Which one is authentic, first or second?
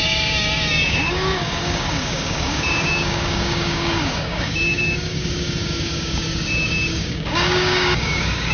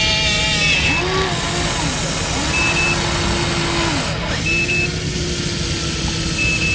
second